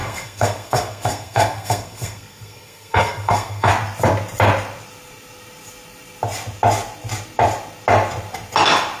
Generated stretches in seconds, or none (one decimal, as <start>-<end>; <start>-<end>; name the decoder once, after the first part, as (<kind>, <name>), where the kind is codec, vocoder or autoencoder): 0.0-3.7 (codec, SNAC)